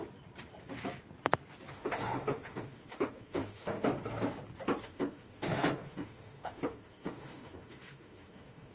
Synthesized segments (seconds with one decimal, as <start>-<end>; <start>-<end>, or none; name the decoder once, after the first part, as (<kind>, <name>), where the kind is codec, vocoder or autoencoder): 1.7-3.9 (autoencoder, DAC-VAE); 4.8-8.7